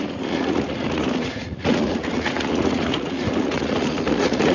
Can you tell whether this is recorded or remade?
remade